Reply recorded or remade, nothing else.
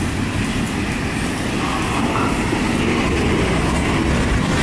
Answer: recorded